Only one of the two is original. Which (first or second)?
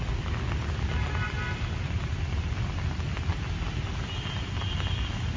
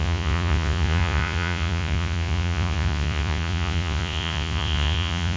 first